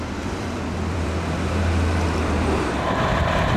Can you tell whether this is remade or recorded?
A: remade